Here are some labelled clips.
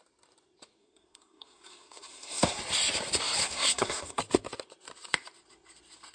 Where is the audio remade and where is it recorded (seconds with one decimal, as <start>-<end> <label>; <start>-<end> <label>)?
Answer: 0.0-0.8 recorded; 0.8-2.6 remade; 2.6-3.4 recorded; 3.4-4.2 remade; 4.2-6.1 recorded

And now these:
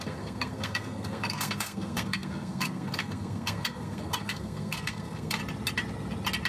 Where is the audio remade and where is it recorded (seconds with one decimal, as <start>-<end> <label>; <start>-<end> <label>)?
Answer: 0.0-5.4 remade; 5.4-6.5 recorded

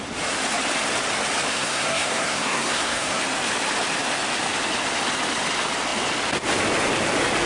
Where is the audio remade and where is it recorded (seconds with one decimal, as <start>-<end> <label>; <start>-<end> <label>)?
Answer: 0.0-1.5 recorded; 1.5-3.2 remade; 3.2-7.5 recorded